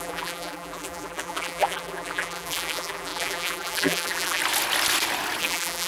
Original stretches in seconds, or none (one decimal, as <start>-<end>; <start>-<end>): 4.4-5.4